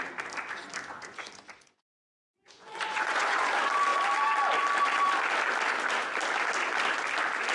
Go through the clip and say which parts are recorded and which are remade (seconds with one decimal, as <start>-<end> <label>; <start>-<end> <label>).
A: 0.0-0.9 recorded; 0.9-3.5 remade; 3.5-7.5 recorded